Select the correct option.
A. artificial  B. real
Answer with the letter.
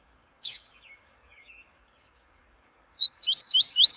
A